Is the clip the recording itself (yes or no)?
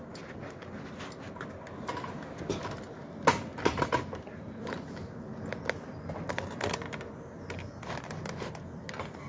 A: yes